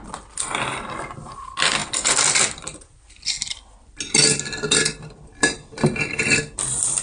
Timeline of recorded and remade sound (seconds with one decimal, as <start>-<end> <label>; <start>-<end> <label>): 0.0-7.0 recorded